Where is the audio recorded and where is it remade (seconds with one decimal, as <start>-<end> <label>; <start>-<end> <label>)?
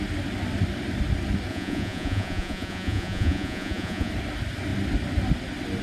0.0-1.5 recorded; 1.5-4.1 remade; 4.1-5.8 recorded